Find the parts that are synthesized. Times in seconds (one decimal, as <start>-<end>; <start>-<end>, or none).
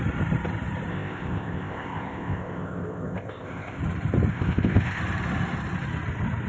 0.9-3.8; 4.3-5.0